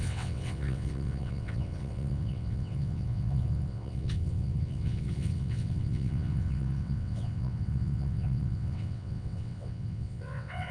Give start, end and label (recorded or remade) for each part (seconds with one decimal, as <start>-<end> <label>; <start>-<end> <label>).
0.0-10.7 remade